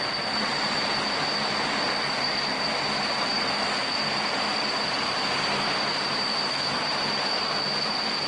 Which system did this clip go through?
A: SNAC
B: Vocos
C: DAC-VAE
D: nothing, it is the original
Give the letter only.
D